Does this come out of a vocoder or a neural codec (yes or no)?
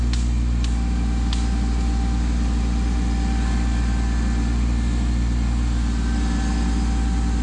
no